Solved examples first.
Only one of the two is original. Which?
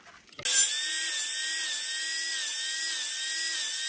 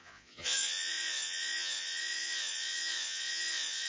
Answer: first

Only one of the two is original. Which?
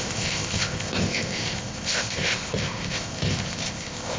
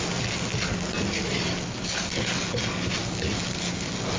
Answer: second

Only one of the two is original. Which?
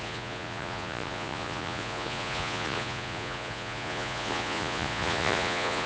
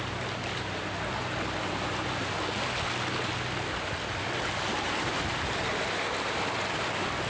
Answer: second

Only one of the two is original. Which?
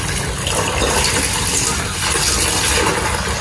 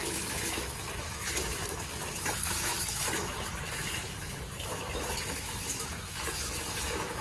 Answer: first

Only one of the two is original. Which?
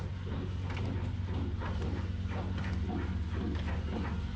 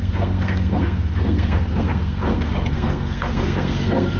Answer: first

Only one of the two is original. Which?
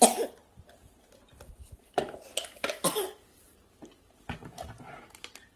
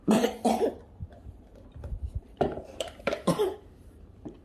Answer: first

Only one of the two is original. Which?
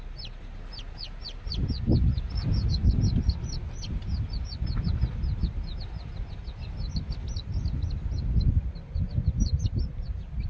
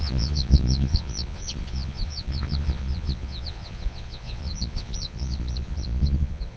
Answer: first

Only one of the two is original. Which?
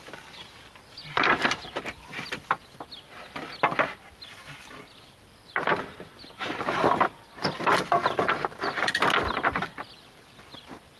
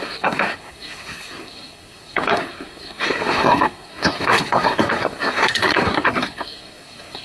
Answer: first